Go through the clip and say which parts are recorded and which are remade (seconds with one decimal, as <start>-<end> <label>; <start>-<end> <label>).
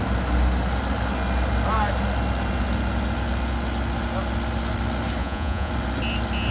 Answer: 0.0-5.2 recorded; 5.2-5.7 remade; 5.7-6.5 recorded